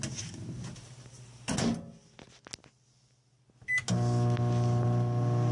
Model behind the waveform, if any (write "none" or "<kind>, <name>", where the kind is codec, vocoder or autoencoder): none